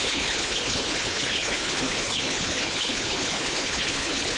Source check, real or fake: fake